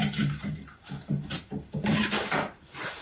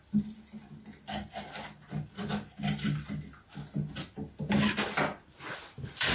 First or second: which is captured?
second